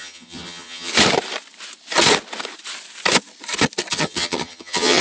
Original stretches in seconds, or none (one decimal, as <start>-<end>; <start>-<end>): 0.9-3.9